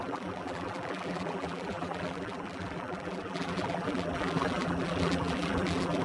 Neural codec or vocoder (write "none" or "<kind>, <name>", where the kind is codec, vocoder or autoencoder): vocoder, BigVGAN v2